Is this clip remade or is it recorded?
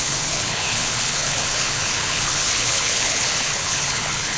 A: remade